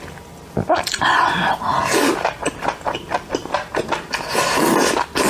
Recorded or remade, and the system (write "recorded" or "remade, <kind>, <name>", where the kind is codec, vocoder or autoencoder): recorded